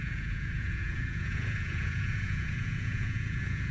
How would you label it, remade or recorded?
remade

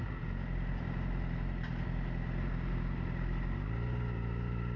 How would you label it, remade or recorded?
recorded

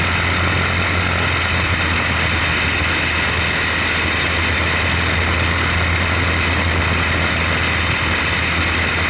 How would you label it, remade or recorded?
recorded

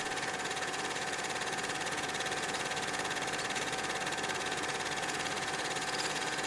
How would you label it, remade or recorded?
remade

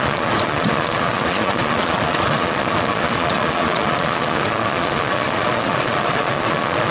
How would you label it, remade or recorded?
remade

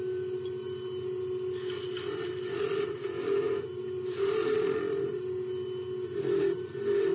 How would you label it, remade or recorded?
recorded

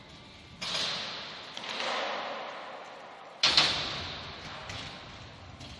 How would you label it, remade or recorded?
recorded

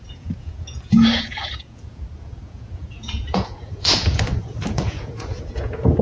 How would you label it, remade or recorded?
remade